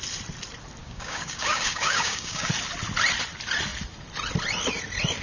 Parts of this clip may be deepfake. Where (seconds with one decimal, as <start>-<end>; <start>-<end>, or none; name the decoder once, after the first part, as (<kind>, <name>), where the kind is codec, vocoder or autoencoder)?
0.8-2.5 (codec, DAC)